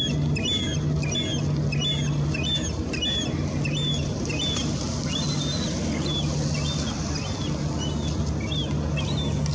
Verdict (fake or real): real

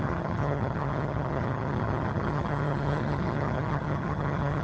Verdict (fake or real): fake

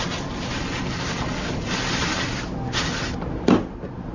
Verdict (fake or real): real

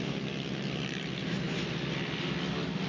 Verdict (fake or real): real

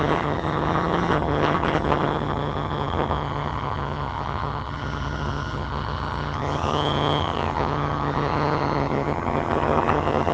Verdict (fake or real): fake